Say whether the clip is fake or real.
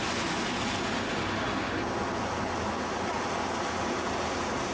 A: real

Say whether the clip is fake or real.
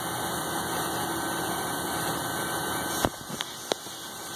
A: real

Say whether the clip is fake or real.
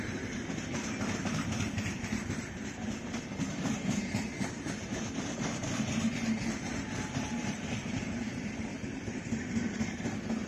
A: fake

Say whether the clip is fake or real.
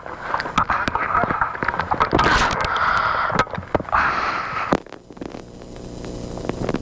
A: real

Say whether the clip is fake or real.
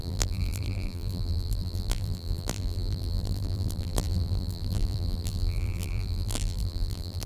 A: fake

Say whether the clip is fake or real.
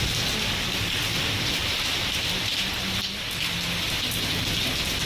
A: real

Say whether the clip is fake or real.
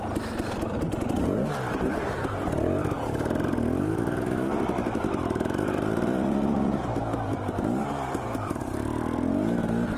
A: fake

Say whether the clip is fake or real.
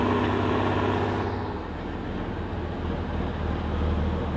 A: real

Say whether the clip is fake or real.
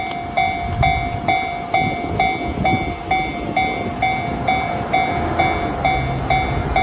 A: real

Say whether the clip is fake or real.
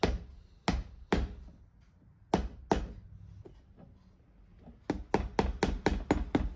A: real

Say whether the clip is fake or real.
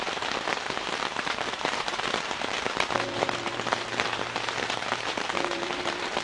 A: fake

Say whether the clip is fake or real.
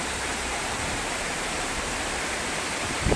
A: fake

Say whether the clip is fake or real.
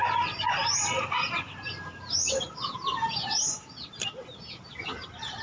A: fake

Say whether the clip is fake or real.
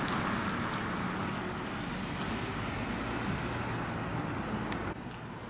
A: real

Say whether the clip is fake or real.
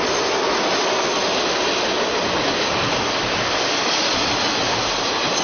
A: real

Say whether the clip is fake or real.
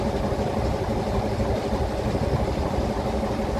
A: fake